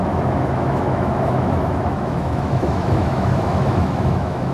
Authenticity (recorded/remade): remade